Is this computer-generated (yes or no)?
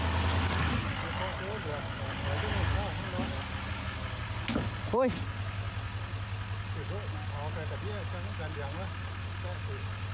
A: no